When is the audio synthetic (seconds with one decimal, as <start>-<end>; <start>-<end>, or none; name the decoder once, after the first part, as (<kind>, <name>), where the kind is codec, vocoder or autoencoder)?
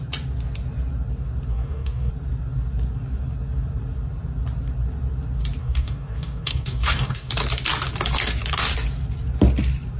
1.5-2.1 (codec, DAC); 5.6-7.3